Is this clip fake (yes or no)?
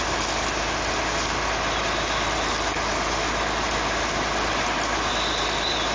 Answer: no